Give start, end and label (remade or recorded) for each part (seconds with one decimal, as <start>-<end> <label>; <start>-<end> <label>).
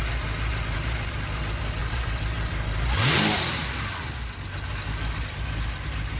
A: 0.0-0.5 recorded; 0.5-1.4 remade; 1.4-1.8 recorded; 1.8-3.6 remade; 3.6-6.2 recorded